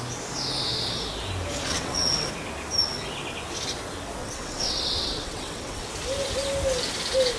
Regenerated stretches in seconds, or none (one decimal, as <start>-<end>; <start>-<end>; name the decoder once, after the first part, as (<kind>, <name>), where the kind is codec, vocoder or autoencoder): 1.7-2.3 (vocoder, WaveNeXt); 4.2-5.9